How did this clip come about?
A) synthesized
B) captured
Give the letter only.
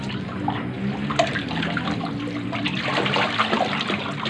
B